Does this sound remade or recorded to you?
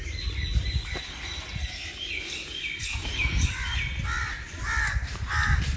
recorded